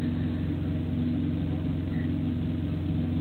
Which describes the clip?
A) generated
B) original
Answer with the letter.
B